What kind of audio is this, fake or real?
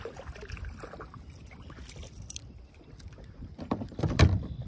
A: real